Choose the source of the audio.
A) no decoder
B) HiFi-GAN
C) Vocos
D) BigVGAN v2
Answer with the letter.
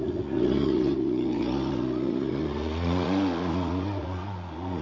C